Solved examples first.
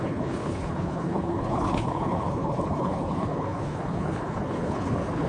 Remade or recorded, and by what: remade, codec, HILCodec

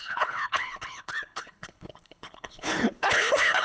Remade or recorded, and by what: remade, codec, HILCodec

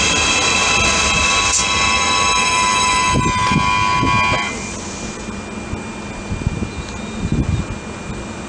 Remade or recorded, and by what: recorded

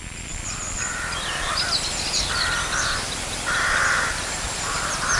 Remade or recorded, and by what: recorded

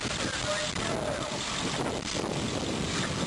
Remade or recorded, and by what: recorded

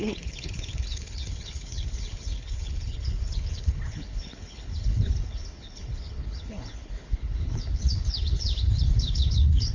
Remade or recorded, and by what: remade, codec, HILCodec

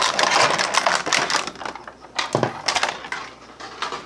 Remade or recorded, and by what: recorded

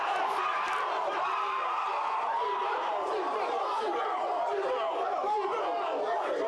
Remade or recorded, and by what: recorded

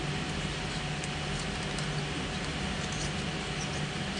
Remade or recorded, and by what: recorded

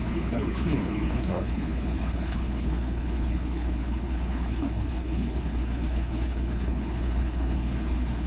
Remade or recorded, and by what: remade, codec, HILCodec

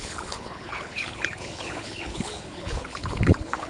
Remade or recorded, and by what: remade, codec, HILCodec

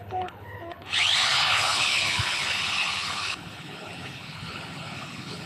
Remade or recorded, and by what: remade, codec, HILCodec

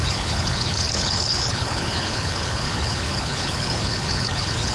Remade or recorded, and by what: remade, codec, HILCodec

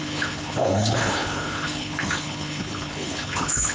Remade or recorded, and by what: remade, codec, HILCodec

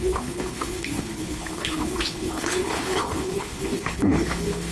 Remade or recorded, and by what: remade, codec, HILCodec